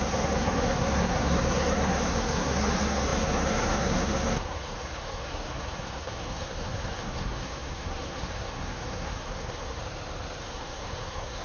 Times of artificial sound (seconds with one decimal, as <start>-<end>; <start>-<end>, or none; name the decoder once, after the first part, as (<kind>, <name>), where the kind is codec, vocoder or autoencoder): 0.0-9.8 (codec, SNAC); 10.4-11.4